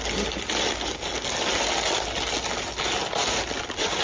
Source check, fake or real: real